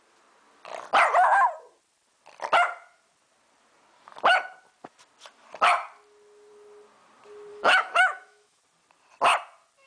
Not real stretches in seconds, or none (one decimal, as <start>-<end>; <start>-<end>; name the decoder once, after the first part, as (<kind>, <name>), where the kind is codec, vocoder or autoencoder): 7.5-8.6 (autoencoder, DAC-VAE)